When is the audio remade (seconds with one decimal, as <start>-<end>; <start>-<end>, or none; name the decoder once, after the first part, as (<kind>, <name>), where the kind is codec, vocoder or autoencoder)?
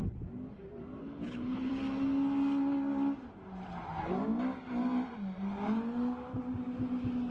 1.0-1.7 (codec, HILCodec)